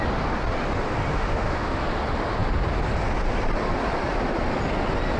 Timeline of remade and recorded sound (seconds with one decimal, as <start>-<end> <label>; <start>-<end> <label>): 0.0-1.1 recorded; 1.1-1.8 remade; 1.8-5.2 recorded